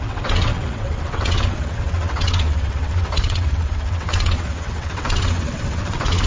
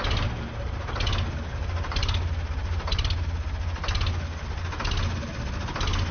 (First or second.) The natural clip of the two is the second